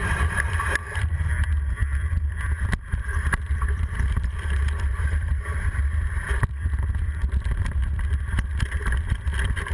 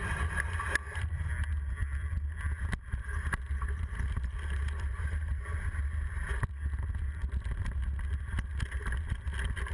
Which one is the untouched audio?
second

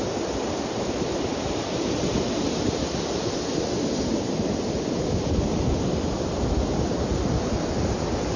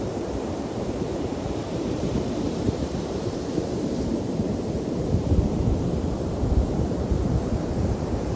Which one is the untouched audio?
first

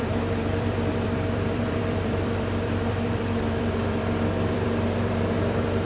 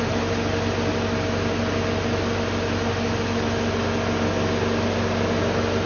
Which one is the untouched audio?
second